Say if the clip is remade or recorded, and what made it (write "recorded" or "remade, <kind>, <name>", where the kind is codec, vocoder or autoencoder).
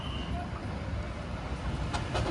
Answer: recorded